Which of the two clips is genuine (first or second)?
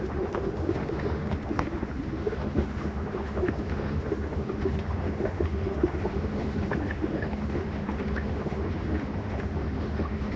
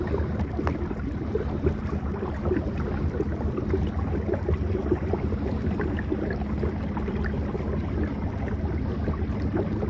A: second